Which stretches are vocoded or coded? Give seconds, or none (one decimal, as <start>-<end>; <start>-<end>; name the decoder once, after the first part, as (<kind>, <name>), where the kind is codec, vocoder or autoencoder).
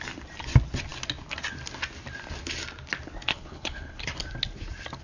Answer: 3.3-4.0 (codec, HILCodec)